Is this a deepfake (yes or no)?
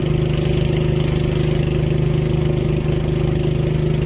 no